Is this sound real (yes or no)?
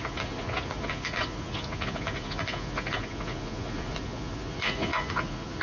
no